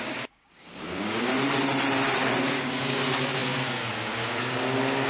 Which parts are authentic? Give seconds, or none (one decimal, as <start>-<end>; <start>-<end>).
1.3-2.4